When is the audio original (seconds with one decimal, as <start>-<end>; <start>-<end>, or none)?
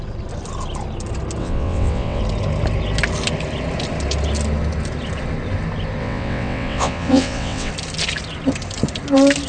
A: 0.0-1.4; 2.2-6.0; 7.7-9.5